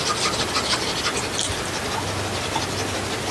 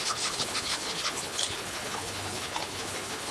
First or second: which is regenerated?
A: second